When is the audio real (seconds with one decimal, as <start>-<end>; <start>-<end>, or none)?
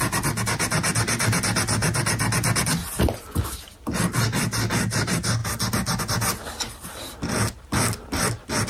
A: 0.0-8.7